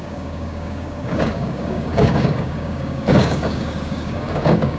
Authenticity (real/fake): fake